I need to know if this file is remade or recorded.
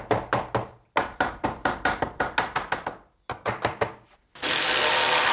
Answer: recorded